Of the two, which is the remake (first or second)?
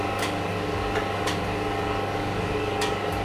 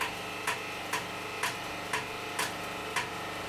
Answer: first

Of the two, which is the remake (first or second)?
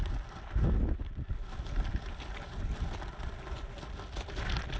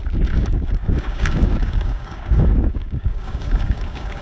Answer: second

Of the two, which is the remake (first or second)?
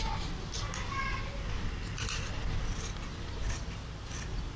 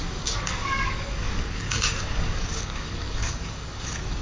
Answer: second